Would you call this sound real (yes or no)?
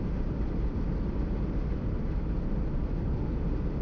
yes